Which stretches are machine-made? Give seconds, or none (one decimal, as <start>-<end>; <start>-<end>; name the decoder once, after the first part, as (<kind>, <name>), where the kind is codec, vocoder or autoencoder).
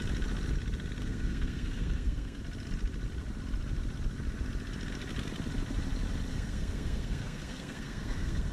1.0-2.4 (codec, SNAC); 6.3-8.5